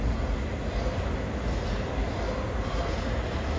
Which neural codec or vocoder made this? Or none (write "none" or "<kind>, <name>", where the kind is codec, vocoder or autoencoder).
none